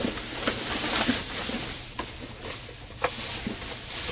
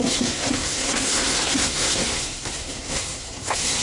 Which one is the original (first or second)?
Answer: first